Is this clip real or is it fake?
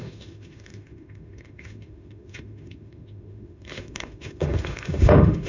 fake